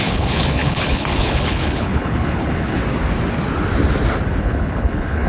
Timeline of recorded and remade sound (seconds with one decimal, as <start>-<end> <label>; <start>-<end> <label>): 0.0-2.8 remade; 2.8-4.4 recorded; 4.4-5.3 remade